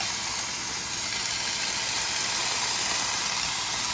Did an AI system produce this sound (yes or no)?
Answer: no